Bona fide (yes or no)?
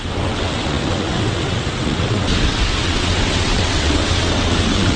no